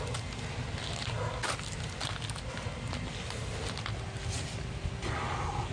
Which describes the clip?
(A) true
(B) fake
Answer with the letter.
A